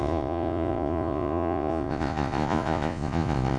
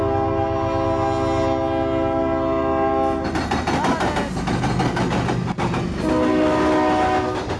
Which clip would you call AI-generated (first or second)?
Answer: first